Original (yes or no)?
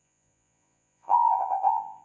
no